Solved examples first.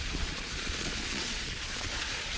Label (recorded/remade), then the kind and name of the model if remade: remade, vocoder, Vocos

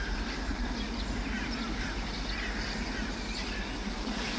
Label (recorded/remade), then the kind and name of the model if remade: recorded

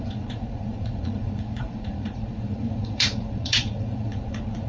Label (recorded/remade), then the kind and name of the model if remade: remade, vocoder, Vocos